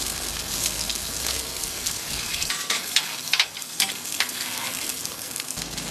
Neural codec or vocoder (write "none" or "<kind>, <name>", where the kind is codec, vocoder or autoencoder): codec, SNAC